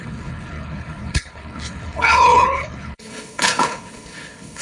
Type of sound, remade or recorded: remade